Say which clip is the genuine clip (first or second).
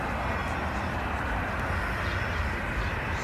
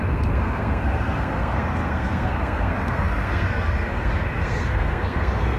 first